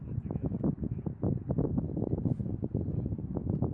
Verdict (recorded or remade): recorded